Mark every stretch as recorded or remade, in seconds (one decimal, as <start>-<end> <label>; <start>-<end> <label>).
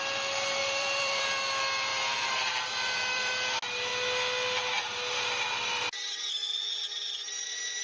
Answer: 0.0-0.6 recorded; 0.6-1.2 remade; 1.2-1.9 recorded; 1.9-3.3 remade; 3.3-7.8 recorded